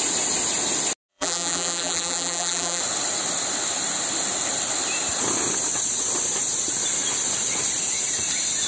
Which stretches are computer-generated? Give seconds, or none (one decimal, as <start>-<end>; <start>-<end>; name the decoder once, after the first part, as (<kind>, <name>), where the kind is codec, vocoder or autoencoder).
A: 1.1-2.8 (vocoder, BigVGAN v2)